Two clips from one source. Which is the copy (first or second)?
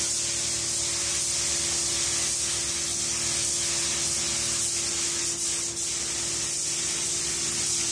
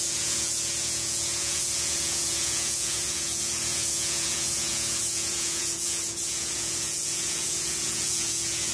second